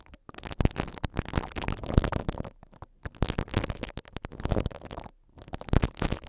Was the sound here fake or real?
real